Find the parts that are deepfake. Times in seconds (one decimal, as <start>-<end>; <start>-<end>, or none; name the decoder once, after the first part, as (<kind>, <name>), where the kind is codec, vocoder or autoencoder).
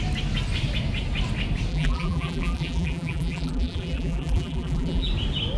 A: 1.7-5.1 (vocoder, BigVGAN v2)